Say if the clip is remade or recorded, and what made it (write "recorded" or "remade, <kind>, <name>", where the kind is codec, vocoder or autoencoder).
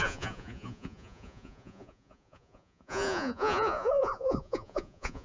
remade, vocoder, Vocos